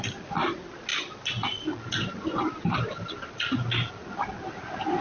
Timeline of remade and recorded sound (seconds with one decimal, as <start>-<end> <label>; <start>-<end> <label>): 0.0-5.0 recorded